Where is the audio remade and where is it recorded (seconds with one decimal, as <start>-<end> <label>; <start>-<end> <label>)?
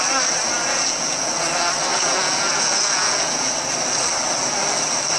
0.0-0.6 recorded; 0.6-1.3 remade; 1.3-1.9 recorded; 1.9-3.5 remade; 3.5-5.2 recorded